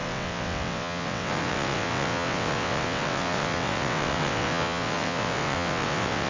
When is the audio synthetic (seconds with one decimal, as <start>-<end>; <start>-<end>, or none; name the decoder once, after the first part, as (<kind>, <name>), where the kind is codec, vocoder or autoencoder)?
0.0-6.3 (vocoder, WaveNeXt)